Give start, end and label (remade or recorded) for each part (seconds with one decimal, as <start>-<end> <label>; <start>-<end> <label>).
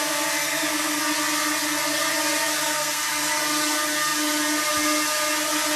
0.0-0.4 recorded; 0.4-1.0 remade; 1.0-2.6 recorded; 2.6-3.4 remade; 3.4-5.8 recorded